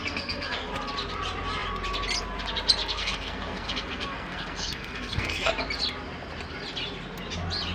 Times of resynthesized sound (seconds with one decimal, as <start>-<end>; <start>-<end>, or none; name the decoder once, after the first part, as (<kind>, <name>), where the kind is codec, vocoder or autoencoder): 0.0-0.7 (codec, SNAC); 2.8-5.5